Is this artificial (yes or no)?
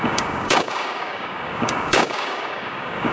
yes